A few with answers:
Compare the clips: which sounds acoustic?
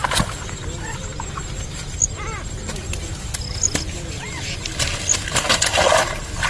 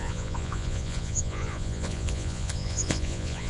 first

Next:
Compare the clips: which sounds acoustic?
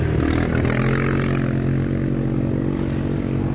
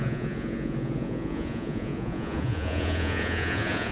first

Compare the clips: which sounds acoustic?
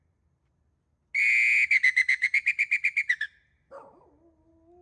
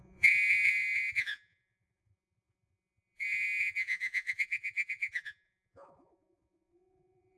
first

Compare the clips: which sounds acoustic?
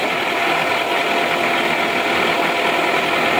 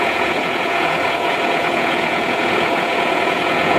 first